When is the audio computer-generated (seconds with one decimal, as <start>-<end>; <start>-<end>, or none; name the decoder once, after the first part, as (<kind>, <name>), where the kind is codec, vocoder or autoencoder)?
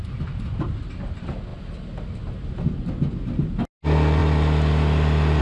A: none